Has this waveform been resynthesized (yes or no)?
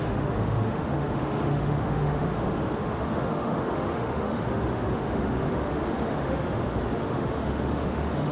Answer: yes